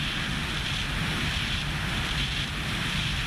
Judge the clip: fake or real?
real